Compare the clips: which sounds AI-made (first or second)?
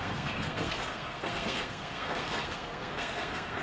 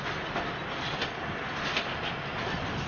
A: first